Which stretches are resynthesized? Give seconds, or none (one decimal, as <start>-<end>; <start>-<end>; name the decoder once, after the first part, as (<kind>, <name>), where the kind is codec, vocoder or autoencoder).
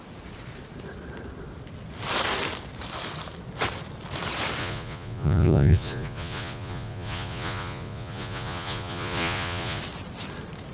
4.6-9.8 (vocoder, Vocos)